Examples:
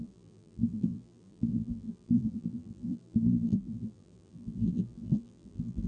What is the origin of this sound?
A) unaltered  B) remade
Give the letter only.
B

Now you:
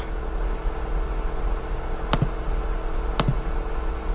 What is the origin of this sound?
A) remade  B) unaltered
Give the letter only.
B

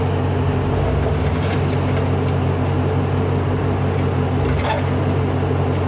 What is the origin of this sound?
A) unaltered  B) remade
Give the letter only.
A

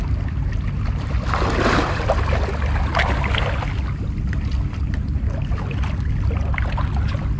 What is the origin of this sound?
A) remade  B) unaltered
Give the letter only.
B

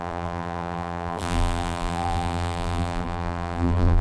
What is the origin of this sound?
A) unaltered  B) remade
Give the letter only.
B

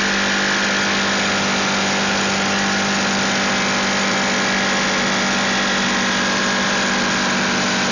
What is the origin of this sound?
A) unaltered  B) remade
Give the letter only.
A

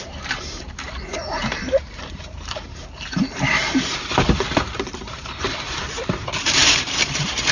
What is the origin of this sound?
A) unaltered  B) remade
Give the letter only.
B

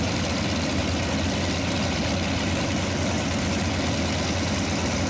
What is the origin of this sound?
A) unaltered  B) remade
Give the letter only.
A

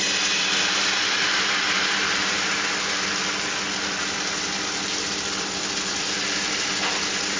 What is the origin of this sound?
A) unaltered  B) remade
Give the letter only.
A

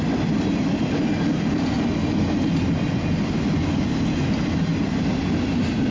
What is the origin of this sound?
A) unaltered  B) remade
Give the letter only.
A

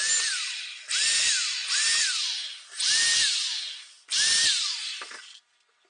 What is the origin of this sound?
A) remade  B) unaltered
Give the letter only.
B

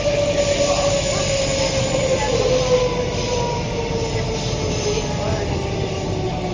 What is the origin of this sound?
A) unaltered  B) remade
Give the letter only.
A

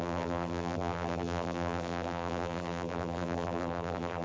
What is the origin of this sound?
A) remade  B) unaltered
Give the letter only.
A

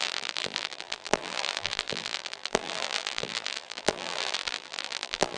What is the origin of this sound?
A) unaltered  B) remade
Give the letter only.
B